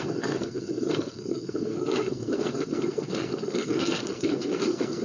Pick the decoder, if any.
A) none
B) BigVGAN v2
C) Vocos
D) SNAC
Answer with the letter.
D